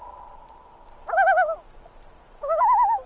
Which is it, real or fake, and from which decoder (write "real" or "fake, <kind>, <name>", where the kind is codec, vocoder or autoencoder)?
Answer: real